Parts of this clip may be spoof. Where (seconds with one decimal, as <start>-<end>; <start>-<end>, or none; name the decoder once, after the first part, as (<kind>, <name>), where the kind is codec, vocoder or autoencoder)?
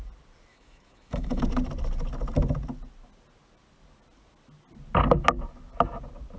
0.5-1.4 (autoencoder, DAC-VAE)